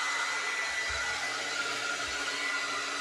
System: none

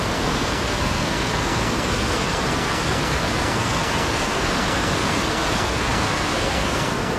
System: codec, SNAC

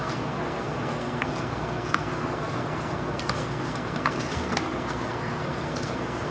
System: codec, SNAC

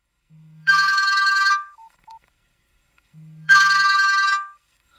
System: codec, SNAC